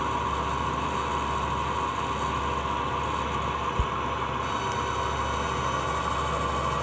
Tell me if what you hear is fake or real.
real